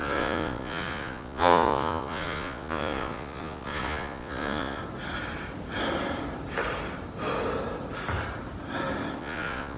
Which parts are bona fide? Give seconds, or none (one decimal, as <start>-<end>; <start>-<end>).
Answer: 4.8-9.2